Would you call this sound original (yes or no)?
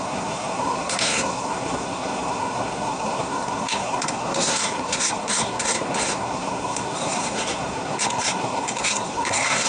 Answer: no